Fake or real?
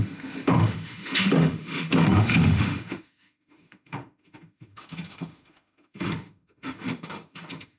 fake